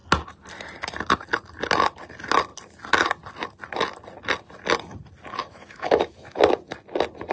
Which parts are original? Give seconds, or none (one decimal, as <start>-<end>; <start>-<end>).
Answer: 0.0-5.4; 6.4-7.3